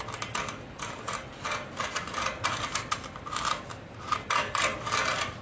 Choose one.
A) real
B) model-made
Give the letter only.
A